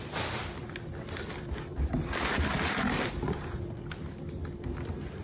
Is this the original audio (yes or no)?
yes